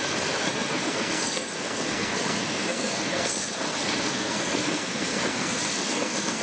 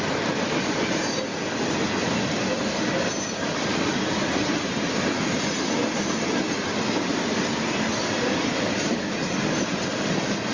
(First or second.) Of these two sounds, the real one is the second